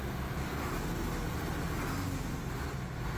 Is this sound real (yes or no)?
yes